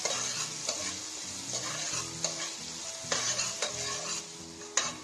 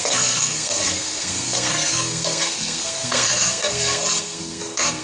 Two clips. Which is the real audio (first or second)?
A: first